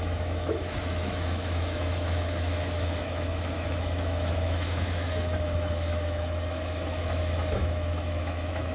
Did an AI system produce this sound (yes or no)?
yes